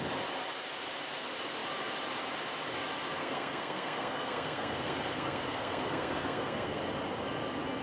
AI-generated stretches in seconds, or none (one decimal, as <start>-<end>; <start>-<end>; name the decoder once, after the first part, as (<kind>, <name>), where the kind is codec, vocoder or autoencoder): 3.2-6.8 (codec, SNAC)